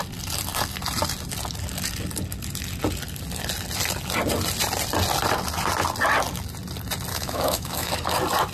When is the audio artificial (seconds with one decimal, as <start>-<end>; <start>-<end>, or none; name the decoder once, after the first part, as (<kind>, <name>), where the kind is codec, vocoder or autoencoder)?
7.1-7.9 (autoencoder, DAC-VAE)

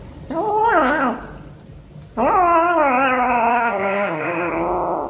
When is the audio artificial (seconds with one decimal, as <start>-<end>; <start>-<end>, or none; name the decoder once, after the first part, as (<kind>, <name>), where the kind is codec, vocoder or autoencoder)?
3.5-4.5 (autoencoder, DAC-VAE)

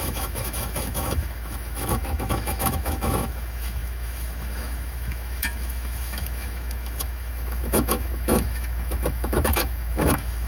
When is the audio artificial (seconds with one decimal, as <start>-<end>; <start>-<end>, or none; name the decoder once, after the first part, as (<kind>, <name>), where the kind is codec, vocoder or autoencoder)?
0.0-10.5 (autoencoder, DAC-VAE)